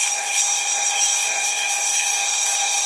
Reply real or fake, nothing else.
fake